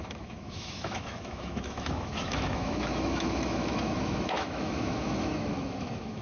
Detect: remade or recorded remade